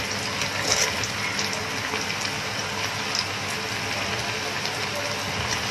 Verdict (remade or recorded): recorded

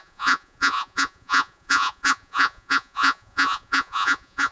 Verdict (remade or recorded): remade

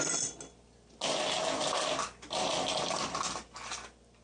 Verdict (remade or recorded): recorded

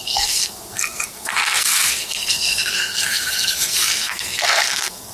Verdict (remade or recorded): remade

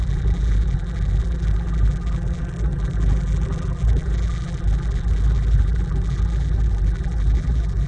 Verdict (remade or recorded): remade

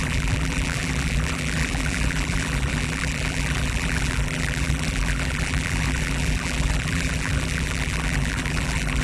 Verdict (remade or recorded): remade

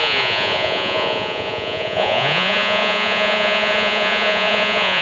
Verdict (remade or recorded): remade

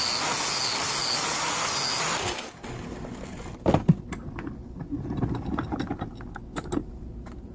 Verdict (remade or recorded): recorded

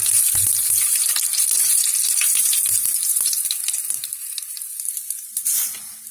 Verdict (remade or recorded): remade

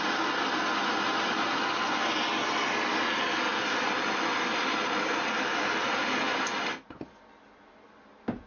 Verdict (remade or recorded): recorded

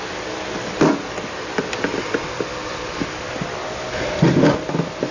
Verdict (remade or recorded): recorded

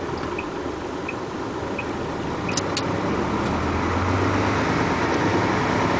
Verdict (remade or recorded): recorded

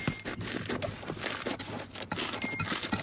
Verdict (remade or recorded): recorded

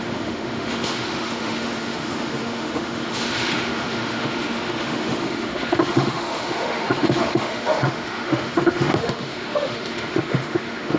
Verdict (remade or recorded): remade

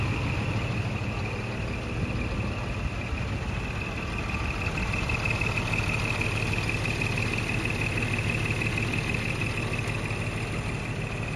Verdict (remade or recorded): recorded